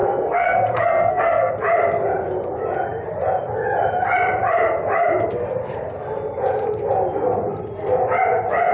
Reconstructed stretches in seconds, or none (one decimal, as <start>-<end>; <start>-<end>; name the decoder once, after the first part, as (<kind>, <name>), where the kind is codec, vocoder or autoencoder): 0.0-1.5 (codec, SNAC)